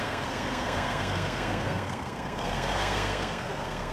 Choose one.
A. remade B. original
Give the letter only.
A